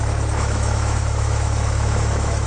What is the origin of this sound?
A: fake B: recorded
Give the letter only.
A